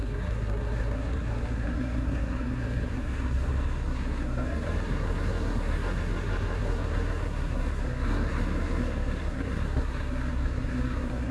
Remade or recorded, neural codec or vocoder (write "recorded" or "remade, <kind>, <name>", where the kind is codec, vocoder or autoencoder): remade, codec, SNAC